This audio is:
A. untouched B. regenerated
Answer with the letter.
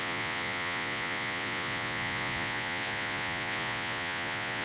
B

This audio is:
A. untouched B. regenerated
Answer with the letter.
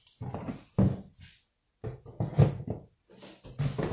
A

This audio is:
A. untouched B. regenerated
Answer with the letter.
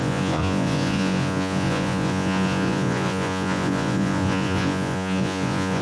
B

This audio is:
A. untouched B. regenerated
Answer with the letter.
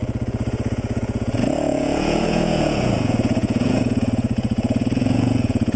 B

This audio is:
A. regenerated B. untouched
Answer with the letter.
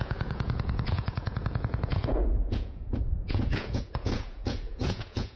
A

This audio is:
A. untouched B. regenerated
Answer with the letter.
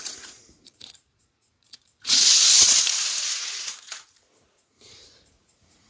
B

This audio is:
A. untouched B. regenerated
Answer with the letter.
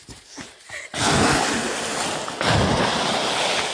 A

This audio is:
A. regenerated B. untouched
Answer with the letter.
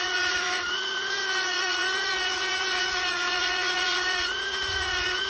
A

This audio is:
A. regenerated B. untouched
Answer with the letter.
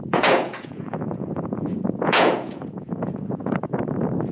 A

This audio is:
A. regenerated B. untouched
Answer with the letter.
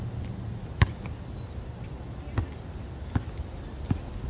B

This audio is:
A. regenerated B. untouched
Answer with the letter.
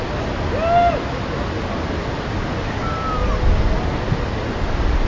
B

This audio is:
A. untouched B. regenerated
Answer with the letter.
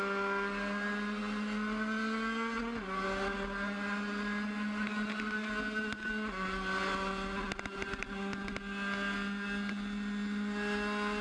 A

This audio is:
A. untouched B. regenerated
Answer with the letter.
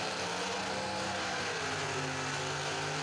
A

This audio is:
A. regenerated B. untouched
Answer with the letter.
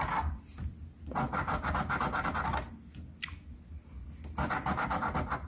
B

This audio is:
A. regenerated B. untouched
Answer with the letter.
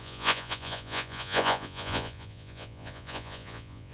A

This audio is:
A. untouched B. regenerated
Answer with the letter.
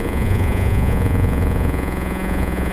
B